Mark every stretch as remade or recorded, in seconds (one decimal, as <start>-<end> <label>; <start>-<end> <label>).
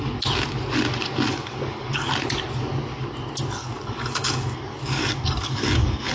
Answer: 0.0-1.3 recorded; 1.3-2.1 remade; 2.1-3.6 recorded; 3.6-6.1 remade